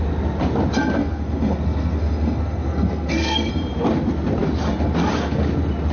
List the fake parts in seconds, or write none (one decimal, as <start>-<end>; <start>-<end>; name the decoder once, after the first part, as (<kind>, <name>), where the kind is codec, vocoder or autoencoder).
1.0-3.5 (codec, SNAC)